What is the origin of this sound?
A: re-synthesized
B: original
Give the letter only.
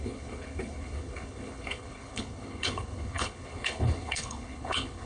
A